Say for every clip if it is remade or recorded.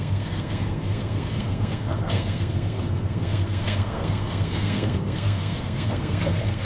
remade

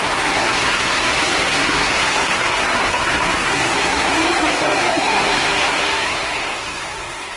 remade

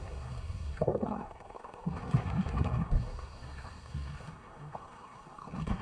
remade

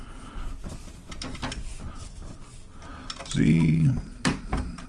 recorded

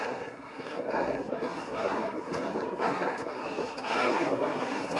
remade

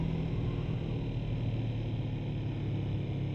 recorded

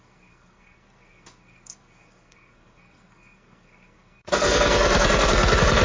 remade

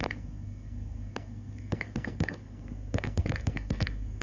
remade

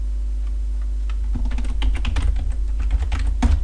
recorded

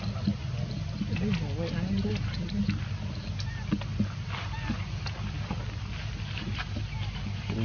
recorded